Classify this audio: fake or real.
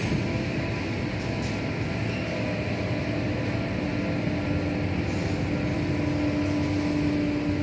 real